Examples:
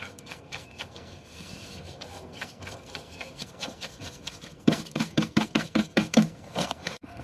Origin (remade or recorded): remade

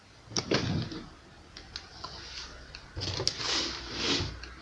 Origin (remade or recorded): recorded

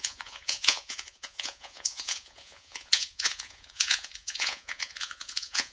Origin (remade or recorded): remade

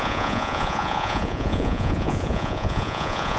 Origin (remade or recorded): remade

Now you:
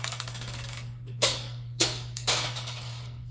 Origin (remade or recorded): remade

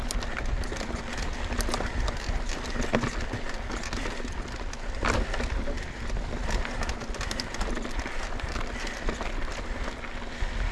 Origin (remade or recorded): recorded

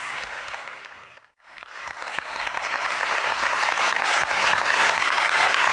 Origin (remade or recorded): remade